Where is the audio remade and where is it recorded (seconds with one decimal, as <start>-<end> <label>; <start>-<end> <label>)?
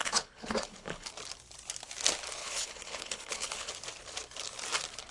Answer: 0.0-1.1 remade; 1.1-2.4 recorded; 2.4-3.7 remade; 3.7-5.1 recorded